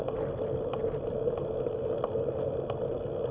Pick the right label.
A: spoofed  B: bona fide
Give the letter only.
B